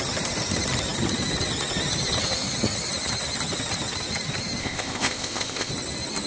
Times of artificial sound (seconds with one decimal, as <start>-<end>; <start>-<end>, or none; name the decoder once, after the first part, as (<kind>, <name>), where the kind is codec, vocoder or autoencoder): 4.6-5.7 (codec, ZipCodec)